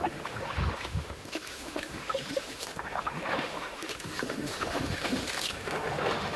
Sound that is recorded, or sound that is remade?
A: remade